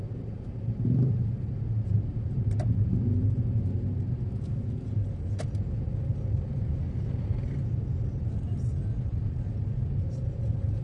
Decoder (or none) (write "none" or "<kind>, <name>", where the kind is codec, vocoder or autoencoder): none